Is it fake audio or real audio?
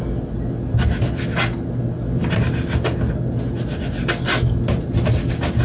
real